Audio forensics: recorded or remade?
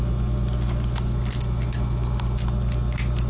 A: recorded